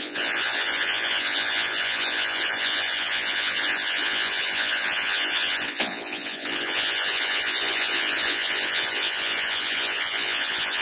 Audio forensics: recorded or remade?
remade